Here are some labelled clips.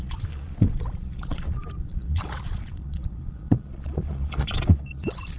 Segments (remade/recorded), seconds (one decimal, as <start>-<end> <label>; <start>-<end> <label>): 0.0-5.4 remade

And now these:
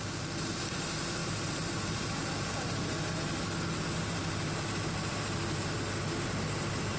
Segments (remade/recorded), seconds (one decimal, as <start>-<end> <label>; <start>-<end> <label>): 0.0-7.0 recorded

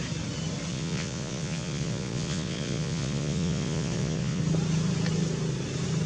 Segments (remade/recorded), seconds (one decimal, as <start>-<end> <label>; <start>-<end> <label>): 0.0-0.7 recorded; 0.7-4.4 remade; 4.4-6.1 recorded